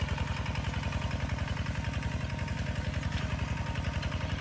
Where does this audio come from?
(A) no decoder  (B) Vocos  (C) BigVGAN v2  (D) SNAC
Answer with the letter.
A